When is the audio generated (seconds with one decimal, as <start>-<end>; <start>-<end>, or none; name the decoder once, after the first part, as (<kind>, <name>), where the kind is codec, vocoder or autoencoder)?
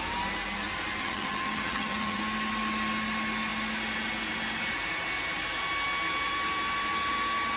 1.0-2.2 (vocoder, HiFi-GAN)